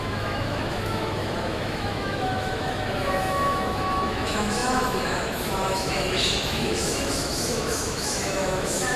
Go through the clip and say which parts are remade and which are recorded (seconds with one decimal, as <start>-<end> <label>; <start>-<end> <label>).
0.0-9.0 remade